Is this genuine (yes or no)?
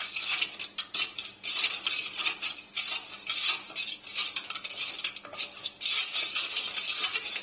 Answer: yes